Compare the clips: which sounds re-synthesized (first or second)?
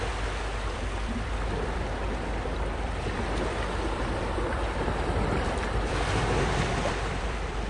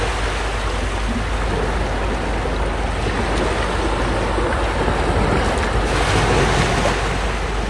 first